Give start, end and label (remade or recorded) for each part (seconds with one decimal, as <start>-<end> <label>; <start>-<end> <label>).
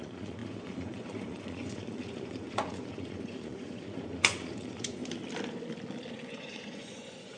0.0-5.0 remade; 5.0-6.1 recorded; 6.1-7.4 remade